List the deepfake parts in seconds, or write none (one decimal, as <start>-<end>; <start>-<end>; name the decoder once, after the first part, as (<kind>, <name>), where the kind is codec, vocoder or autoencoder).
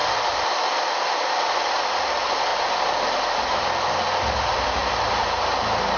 none